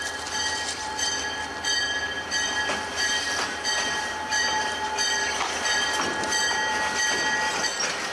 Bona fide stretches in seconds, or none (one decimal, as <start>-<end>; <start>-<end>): 0.0-8.1

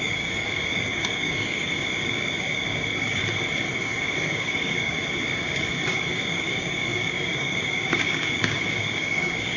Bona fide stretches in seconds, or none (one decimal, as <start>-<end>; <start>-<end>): 3.2-3.8

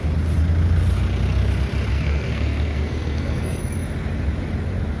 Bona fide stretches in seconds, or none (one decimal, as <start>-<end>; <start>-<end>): 0.0-1.9; 3.6-5.0